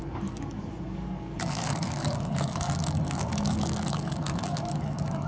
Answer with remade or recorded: remade